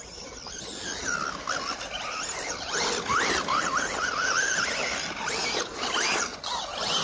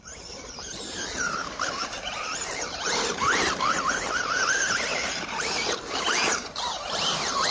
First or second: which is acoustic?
first